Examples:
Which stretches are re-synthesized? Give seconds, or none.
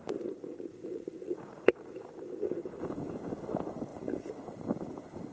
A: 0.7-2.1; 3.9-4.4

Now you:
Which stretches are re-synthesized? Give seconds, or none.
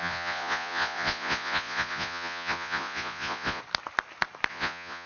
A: 0.0-3.6; 4.5-5.1